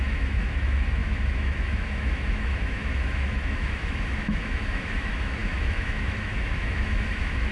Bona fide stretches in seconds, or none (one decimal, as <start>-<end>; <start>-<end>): none